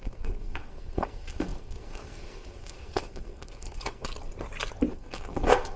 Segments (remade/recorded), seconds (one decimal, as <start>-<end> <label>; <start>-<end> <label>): 0.0-4.1 remade; 4.1-4.9 recorded; 4.9-5.8 remade